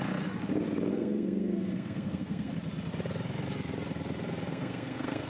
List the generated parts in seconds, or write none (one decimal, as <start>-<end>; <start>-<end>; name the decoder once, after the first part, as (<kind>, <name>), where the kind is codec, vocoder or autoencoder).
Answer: 0.9-2.5 (codec, SNAC); 4.5-5.3